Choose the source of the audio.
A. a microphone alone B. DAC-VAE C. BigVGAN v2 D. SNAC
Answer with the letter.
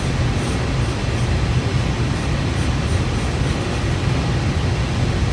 A